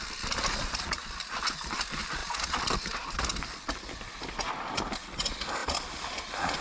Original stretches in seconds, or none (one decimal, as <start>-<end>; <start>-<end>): 0.0-5.6